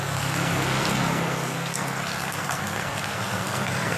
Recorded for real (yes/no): no